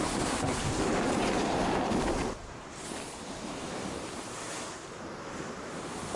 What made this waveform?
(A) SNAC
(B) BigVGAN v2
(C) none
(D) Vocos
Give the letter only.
C